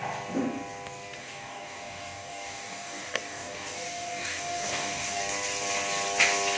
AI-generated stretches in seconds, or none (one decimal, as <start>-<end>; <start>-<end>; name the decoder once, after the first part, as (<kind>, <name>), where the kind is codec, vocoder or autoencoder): 1.2-5.2 (codec, DAC)